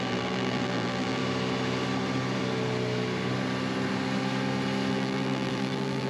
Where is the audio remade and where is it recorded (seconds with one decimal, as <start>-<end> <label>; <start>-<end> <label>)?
0.0-1.2 remade; 1.2-4.9 recorded; 4.9-6.1 remade

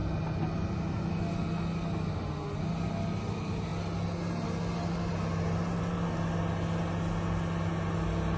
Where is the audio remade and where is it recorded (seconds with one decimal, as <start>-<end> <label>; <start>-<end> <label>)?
0.0-8.4 recorded

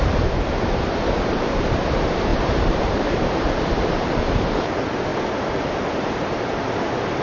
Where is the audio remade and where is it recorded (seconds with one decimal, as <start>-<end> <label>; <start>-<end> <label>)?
0.0-5.1 remade; 5.1-5.9 recorded; 5.9-7.2 remade

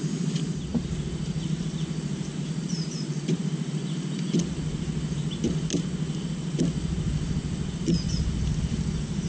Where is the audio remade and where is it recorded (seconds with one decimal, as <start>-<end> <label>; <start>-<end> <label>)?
0.0-0.7 recorded; 0.7-3.5 remade; 3.5-9.3 recorded

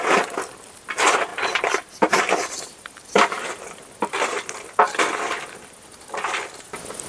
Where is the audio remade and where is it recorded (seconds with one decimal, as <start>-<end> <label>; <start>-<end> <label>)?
0.0-1.3 recorded; 1.3-3.4 remade; 3.4-7.1 recorded

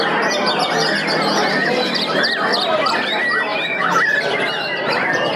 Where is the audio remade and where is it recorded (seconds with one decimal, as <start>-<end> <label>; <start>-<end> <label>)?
0.0-1.6 recorded; 1.6-2.9 remade; 2.9-3.5 recorded; 3.5-4.1 remade; 4.1-5.4 recorded

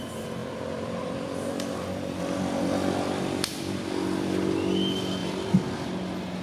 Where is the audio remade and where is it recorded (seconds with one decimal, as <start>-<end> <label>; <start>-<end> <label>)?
0.0-0.4 recorded; 0.4-3.9 remade; 3.9-5.2 recorded; 5.2-5.7 remade; 5.7-6.4 recorded